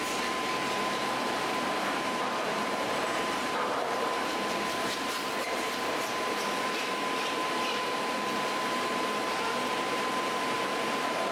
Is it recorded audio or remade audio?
remade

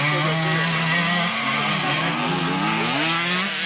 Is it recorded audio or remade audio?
recorded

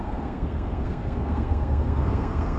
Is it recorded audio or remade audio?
remade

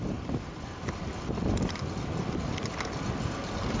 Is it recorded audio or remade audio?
recorded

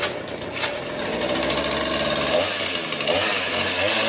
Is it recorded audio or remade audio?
recorded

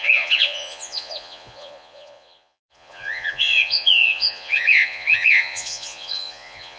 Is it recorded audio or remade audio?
remade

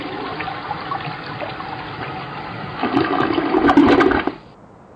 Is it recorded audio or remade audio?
recorded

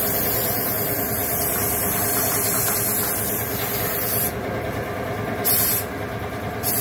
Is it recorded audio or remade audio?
recorded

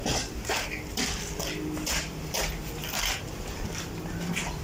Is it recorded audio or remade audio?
remade